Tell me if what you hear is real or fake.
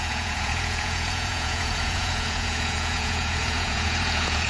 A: fake